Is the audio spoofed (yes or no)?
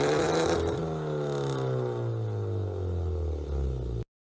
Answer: no